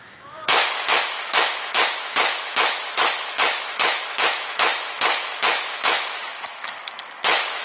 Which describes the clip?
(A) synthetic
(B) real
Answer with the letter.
A